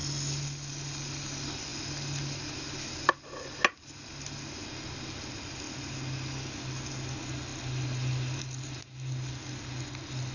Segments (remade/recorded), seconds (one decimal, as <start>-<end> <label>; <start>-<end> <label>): 0.0-10.3 recorded